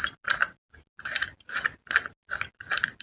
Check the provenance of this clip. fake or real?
real